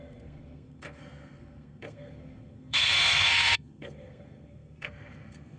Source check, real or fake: fake